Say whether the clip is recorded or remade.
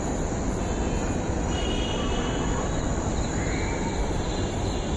recorded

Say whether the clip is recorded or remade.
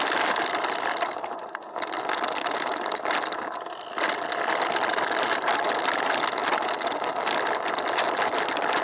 recorded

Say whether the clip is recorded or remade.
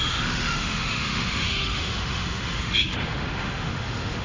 remade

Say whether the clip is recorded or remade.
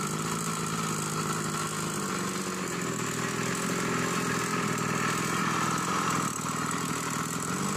recorded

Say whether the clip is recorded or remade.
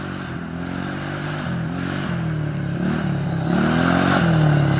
recorded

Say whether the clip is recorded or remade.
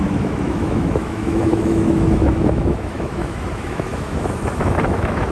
remade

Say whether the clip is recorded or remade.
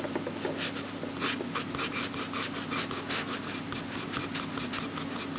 recorded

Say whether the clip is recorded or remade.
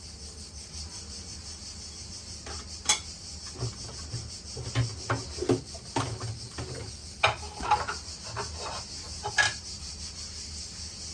recorded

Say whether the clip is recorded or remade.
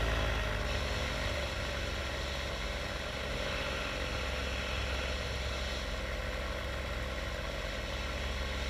recorded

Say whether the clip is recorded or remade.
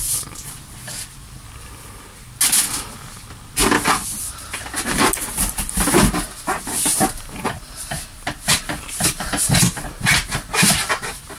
recorded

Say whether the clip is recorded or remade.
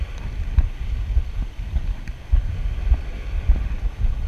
recorded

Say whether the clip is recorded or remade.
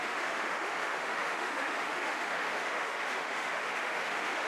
remade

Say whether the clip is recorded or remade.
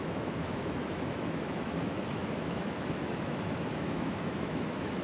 remade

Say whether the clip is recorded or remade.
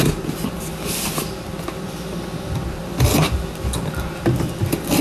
recorded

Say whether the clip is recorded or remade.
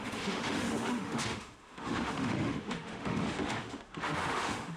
remade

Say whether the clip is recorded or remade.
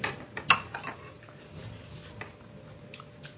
recorded